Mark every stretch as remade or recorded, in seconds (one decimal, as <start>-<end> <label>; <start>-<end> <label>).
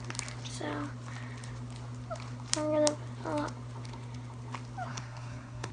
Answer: 0.0-4.9 recorded; 4.9-5.7 remade